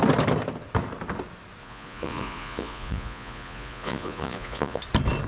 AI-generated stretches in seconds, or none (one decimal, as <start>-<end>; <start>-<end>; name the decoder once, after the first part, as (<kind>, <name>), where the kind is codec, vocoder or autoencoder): 1.6-4.8 (vocoder, Vocos)